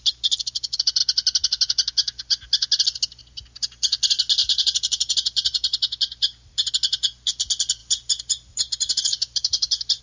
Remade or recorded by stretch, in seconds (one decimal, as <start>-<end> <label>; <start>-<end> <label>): 0.0-4.4 recorded; 4.4-6.7 remade; 6.7-7.8 recorded; 7.8-10.0 remade

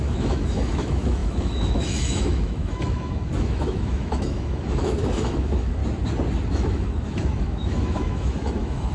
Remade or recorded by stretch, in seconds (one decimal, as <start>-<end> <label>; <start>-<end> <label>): 0.0-5.8 remade; 5.8-6.5 recorded; 6.5-8.9 remade

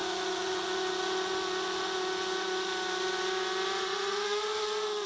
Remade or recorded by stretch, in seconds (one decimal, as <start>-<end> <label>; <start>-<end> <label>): 0.0-2.7 remade; 2.7-3.8 recorded; 3.8-5.1 remade

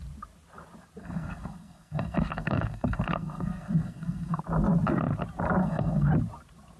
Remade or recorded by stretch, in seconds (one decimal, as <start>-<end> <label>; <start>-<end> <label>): 0.0-1.0 recorded; 1.0-4.4 remade; 4.4-5.6 recorded; 5.6-6.1 remade; 6.1-6.8 recorded